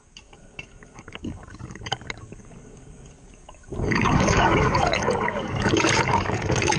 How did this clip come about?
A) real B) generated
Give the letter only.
B